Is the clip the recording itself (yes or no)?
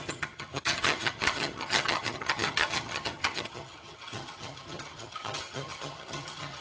no